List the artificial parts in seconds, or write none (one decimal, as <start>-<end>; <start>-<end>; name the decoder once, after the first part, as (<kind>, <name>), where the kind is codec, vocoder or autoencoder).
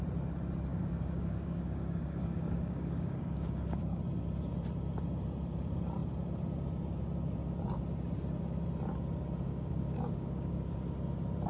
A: 0.7-4.0 (codec, DAC); 9.5-10.8